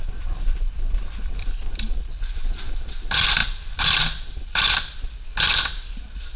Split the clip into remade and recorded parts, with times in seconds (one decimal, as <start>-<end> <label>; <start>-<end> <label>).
0.0-6.4 recorded